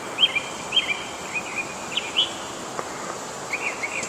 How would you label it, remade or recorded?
recorded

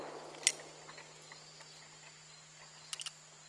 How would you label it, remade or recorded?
recorded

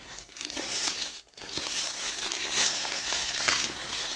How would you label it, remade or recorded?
remade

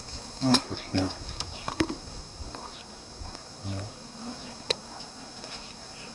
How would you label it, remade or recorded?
remade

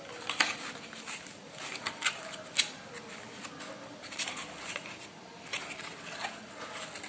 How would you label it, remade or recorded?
recorded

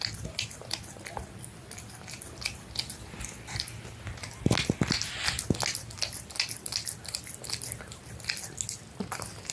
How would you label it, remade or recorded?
recorded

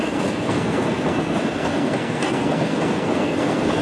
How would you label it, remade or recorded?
remade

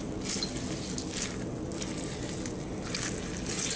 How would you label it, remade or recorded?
recorded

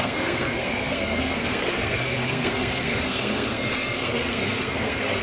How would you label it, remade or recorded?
remade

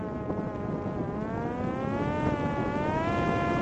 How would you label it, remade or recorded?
recorded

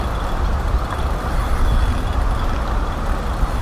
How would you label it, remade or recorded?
recorded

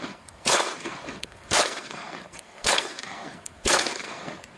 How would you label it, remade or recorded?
remade